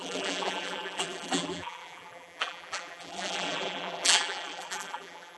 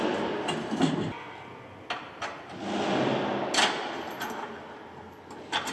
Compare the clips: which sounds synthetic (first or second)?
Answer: first